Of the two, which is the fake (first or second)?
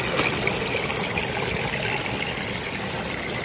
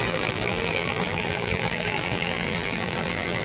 second